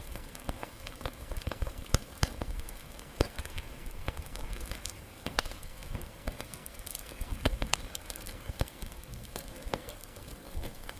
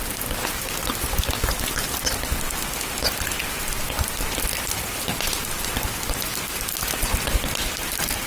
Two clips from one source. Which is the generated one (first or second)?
first